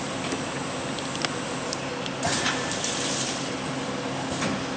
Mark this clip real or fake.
real